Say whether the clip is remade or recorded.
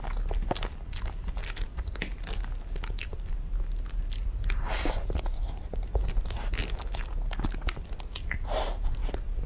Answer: recorded